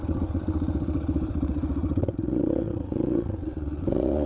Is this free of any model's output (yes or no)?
no